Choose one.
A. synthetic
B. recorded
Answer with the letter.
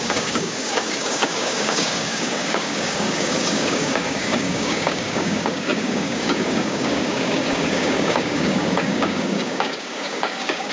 A